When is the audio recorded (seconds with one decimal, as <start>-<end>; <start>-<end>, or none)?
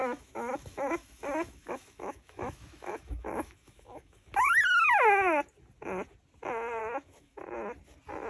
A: 4.3-6.8; 7.4-8.3